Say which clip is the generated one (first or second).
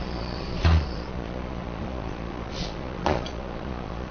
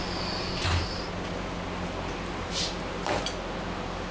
first